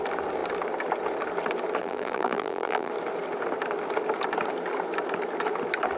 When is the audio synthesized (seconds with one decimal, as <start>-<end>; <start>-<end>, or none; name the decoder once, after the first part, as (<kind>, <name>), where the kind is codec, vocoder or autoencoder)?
1.8-2.9 (vocoder, BigVGAN v2)